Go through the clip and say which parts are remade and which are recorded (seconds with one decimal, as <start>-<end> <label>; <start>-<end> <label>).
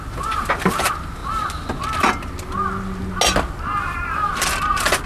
0.0-5.1 recorded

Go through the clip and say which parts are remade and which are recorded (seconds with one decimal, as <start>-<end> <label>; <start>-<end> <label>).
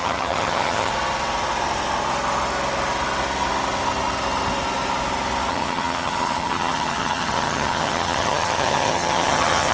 0.0-0.9 remade; 0.9-5.5 recorded; 5.5-9.7 remade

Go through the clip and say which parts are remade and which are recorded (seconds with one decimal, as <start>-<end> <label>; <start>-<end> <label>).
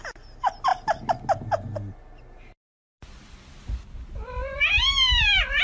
0.0-5.6 recorded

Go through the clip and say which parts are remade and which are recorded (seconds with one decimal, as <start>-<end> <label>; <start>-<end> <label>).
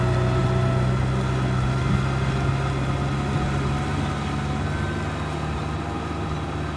0.0-6.8 recorded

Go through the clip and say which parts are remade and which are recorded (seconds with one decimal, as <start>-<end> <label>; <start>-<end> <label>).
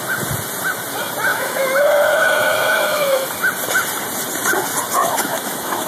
0.0-1.3 recorded; 1.3-3.3 remade; 3.3-5.0 recorded; 5.0-5.9 remade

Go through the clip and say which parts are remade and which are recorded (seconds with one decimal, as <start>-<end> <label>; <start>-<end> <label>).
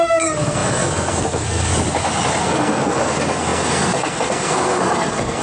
0.0-1.7 remade; 1.7-2.4 recorded; 2.4-5.4 remade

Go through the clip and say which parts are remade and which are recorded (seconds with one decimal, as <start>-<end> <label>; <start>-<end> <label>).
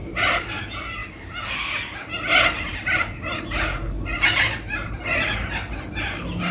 0.0-1.0 recorded; 1.0-2.1 remade; 2.1-2.7 recorded; 2.7-4.9 remade; 4.9-6.5 recorded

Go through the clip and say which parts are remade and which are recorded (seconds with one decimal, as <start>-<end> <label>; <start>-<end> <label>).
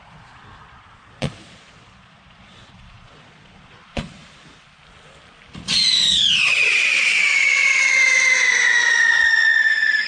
0.0-4.2 remade; 4.2-6.1 recorded; 6.1-7.6 remade; 7.6-8.9 recorded; 8.9-10.1 remade